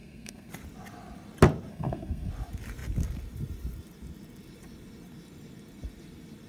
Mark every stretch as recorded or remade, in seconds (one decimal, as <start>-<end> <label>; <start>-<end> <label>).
0.0-0.5 remade; 0.5-1.7 recorded; 1.7-2.3 remade; 2.3-6.5 recorded